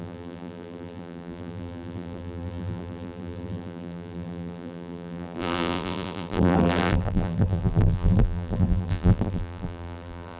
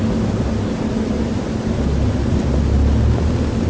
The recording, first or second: second